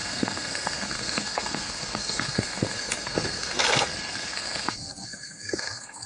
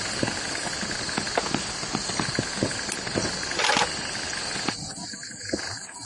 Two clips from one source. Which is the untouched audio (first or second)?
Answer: second